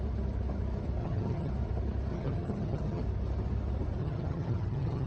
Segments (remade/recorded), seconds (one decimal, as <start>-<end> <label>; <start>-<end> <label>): 0.0-1.0 recorded; 1.0-1.5 remade; 1.5-2.1 recorded; 2.1-3.0 remade; 3.0-4.0 recorded; 4.0-5.1 remade